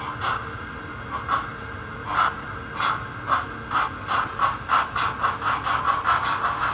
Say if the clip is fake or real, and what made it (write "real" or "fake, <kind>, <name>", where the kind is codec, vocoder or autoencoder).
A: real